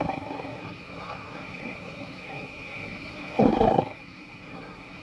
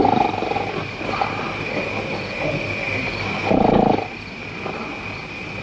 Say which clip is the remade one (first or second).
first